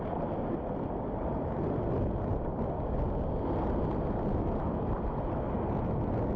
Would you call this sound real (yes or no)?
yes